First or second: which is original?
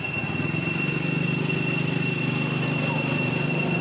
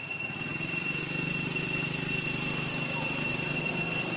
first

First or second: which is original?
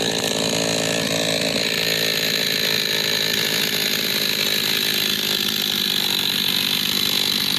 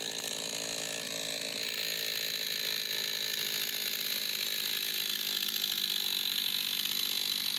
second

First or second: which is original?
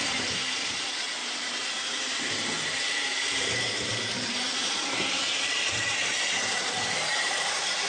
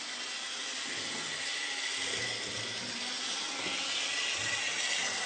second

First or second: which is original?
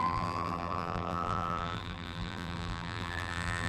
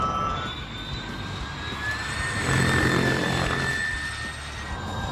second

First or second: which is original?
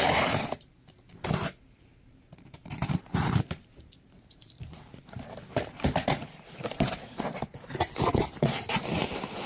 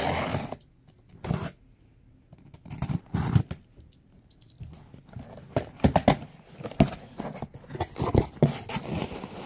second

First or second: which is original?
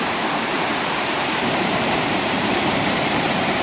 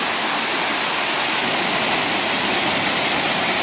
second